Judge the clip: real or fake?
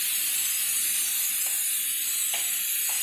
real